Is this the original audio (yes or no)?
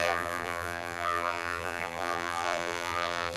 no